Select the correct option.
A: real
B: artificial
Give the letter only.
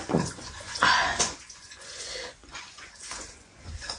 B